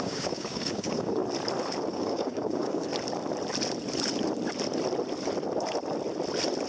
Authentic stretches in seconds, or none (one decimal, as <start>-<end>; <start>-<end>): 1.2-1.9; 2.9-6.7